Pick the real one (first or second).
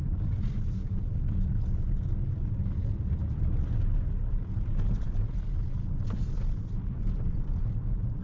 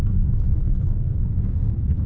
first